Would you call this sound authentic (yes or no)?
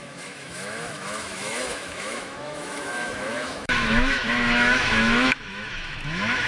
no